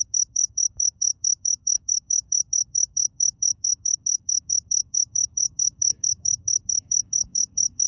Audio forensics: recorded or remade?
remade